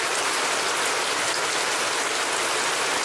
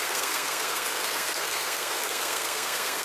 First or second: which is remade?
second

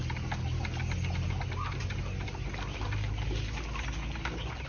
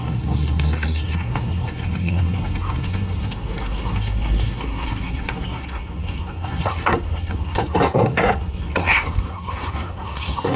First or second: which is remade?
second